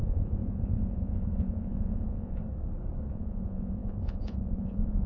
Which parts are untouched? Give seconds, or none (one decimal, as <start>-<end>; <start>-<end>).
2.4-3.1